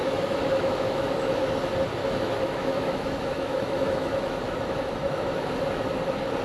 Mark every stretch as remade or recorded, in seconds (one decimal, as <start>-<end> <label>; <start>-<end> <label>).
0.0-1.5 remade; 1.5-2.0 recorded; 2.0-5.5 remade; 5.5-6.4 recorded

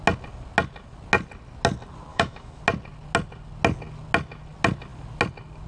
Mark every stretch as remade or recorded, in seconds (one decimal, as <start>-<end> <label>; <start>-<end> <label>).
0.0-2.1 recorded; 2.1-2.6 remade; 2.6-5.7 recorded

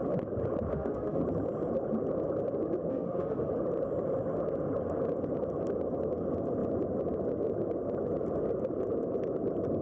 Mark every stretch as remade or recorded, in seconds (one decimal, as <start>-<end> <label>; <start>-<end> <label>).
0.0-0.7 recorded; 0.7-1.2 remade; 1.2-2.9 recorded; 2.9-3.5 remade; 3.5-9.8 recorded

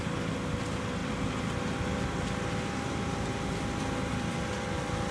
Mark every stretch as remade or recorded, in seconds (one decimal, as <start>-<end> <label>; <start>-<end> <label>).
0.0-5.1 recorded

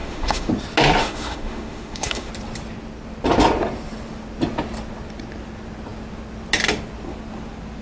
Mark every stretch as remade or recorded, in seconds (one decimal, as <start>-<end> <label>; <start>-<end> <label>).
0.0-0.5 remade; 0.5-1.0 recorded; 1.0-2.3 remade; 2.3-7.8 recorded

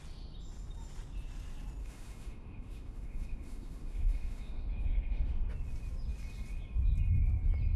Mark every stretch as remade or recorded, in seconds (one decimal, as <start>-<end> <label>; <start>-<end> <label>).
0.0-1.8 recorded; 1.8-5.5 remade; 5.5-7.8 recorded

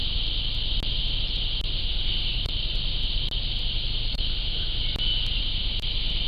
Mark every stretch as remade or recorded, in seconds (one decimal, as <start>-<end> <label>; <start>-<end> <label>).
0.0-1.8 recorded; 1.8-2.5 remade; 2.5-4.1 recorded; 4.1-4.8 remade; 4.8-6.3 recorded